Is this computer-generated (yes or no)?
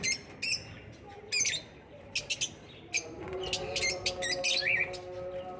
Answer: no